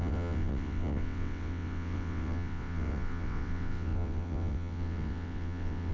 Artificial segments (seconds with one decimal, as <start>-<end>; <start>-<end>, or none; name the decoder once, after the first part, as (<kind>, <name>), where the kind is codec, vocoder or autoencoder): 0.0-5.9 (vocoder, WaveNeXt)